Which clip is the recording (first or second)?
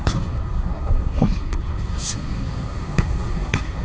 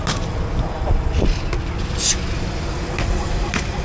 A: second